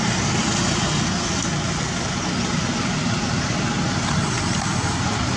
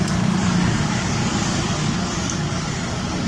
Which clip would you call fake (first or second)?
second